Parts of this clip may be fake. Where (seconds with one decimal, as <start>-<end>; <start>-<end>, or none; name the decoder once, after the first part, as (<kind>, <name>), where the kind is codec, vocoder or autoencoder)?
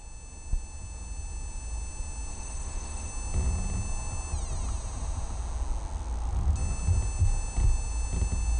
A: 2.3-3.1 (autoencoder, DAC-VAE)